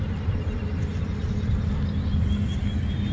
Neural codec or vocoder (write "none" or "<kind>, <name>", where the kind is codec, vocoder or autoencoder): none